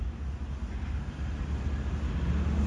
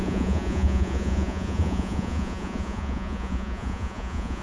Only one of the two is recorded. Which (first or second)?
first